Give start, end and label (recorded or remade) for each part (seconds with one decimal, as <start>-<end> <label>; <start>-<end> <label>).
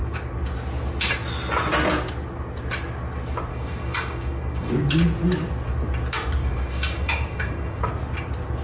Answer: 0.0-3.5 recorded; 3.5-4.7 remade; 4.7-6.4 recorded; 6.4-7.8 remade; 7.8-8.6 recorded